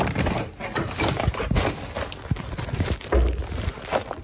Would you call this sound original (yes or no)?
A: yes